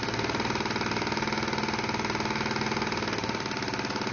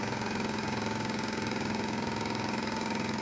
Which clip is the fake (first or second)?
second